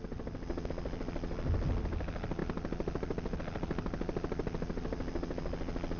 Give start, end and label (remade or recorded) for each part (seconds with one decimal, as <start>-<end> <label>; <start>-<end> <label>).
0.0-6.0 recorded